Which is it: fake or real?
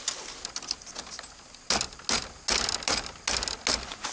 real